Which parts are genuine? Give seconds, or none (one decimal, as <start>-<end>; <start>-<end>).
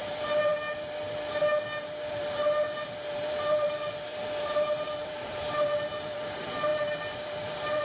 0.5-2.1